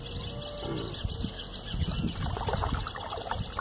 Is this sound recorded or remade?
recorded